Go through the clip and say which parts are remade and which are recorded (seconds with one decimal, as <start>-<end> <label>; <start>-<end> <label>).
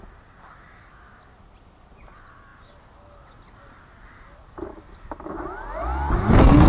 0.0-6.7 recorded